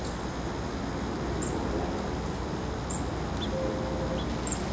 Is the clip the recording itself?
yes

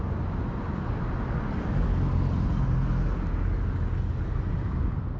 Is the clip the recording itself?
yes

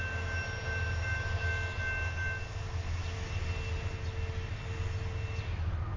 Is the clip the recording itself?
yes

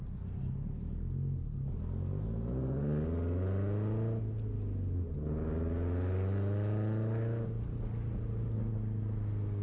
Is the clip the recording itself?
yes